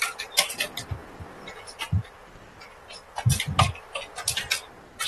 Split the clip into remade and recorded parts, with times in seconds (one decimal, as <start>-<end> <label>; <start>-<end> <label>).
0.0-1.0 recorded; 1.0-4.1 remade; 4.1-5.1 recorded